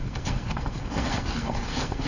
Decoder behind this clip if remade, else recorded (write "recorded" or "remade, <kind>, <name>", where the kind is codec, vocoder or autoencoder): remade, codec, SNAC